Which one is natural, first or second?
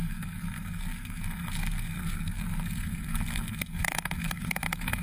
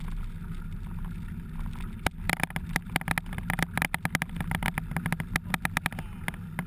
second